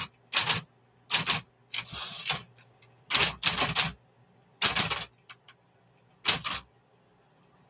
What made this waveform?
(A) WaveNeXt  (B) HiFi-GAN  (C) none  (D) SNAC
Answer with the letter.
C